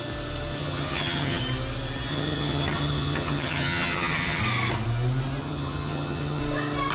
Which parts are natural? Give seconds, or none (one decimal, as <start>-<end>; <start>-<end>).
0.0-0.6; 1.4-2.1; 4.4-5.4; 6.4-6.9